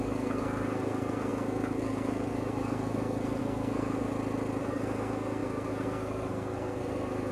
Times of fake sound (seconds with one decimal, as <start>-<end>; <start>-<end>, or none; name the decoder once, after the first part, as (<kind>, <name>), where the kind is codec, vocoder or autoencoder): 0.0-4.1 (codec, SNAC); 4.6-7.3

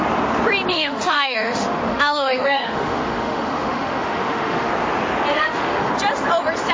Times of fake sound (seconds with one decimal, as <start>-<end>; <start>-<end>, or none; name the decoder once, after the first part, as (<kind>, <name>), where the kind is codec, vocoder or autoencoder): 0.7-4.7 (autoencoder, DAC-VAE); 5.3-5.9

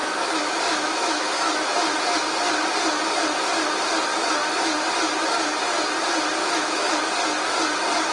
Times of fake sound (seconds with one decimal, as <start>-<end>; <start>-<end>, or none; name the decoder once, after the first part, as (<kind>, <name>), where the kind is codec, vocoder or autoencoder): 0.0-2.0 (autoencoder, DAC-VAE); 6.4-7.0

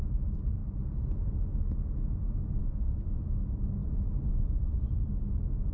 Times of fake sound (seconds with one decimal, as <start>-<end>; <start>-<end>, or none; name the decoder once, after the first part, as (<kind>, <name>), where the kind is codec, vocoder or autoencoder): 2.6-3.4 (autoencoder, DAC-VAE)